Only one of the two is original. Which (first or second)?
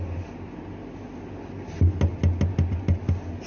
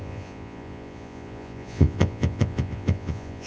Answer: first